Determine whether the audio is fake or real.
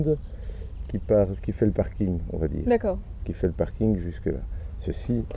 real